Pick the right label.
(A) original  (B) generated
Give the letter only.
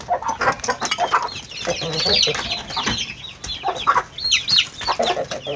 A